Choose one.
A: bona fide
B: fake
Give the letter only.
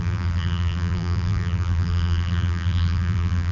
B